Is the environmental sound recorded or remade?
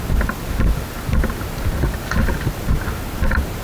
recorded